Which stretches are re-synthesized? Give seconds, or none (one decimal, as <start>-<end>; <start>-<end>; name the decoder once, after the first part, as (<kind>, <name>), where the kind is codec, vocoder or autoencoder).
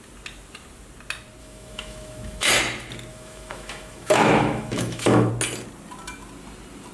1.4-2.5 (autoencoder, DAC-VAE); 3.1-5.3